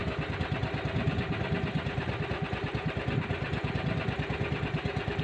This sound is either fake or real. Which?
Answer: real